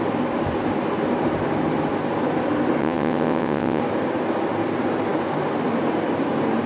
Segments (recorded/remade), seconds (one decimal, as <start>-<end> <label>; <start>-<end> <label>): 0.0-2.8 recorded; 2.8-3.8 remade; 3.8-6.7 recorded